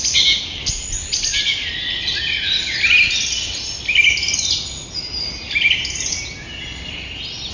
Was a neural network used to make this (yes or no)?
no